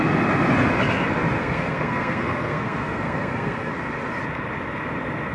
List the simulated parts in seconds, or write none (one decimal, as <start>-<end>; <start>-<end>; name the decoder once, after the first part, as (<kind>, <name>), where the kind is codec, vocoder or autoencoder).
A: 1.4-3.7 (codec, SNAC)